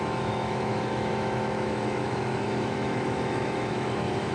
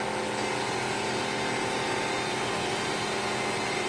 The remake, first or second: first